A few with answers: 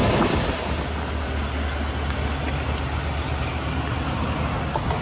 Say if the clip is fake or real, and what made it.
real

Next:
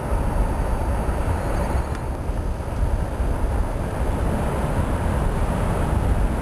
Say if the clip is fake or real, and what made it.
real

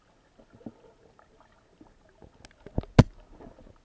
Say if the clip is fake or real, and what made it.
real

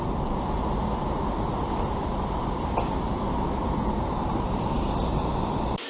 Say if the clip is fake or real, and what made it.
real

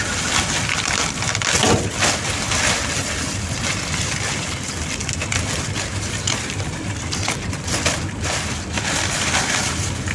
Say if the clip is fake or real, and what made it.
real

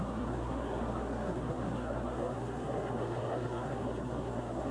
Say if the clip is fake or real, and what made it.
fake, codec, SNAC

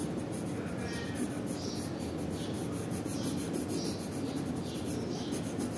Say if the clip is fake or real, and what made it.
real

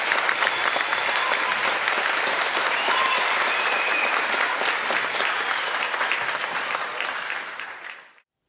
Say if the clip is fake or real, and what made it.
fake, vocoder, BigVGAN v2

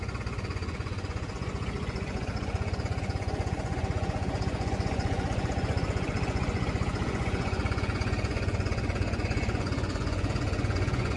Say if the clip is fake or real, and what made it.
fake, vocoder, Vocos